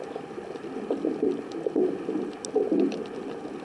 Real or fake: real